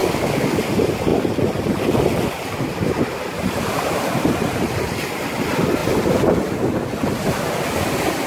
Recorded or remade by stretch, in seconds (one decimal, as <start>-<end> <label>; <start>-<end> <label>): 0.0-0.6 remade; 0.6-8.3 recorded